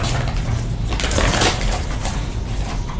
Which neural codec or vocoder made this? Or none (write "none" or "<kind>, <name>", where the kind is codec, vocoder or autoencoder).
none